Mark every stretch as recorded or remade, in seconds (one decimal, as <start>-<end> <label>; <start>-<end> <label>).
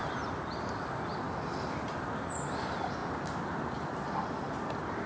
0.0-5.1 recorded